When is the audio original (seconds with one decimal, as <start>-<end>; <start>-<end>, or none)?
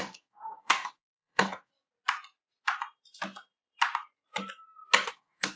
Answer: 1.7-5.1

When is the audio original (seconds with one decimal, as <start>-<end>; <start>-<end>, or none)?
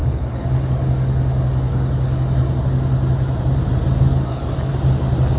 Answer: 2.6-4.1; 4.7-5.4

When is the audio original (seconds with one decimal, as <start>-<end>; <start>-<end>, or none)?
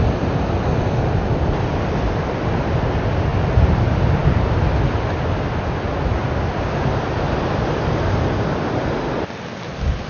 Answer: 0.0-10.1